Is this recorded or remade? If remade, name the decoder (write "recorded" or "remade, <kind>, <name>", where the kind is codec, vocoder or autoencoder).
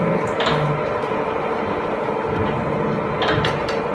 recorded